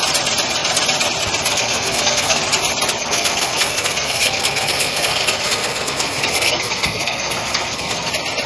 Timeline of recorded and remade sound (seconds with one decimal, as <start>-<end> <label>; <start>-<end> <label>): 0.0-1.5 recorded; 1.5-2.4 remade; 2.4-3.0 recorded; 3.0-8.1 remade; 8.1-8.5 recorded